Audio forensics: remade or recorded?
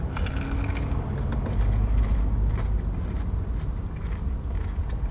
recorded